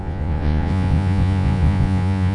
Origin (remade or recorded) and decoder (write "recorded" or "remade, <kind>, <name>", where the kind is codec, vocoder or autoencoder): remade, vocoder, Vocos